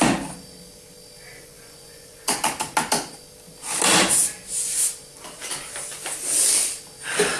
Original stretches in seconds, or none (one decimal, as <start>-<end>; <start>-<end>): 0.0-1.3; 2.5-7.4